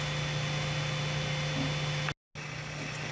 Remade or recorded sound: recorded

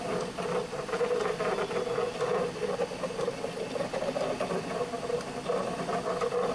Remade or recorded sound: recorded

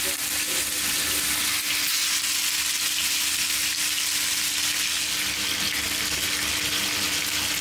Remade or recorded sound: recorded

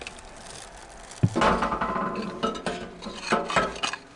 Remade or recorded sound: recorded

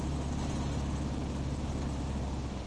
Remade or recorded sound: recorded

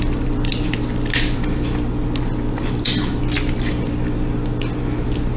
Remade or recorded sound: recorded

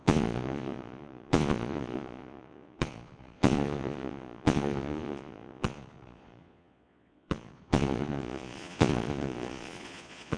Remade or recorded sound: remade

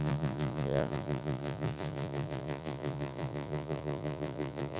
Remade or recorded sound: remade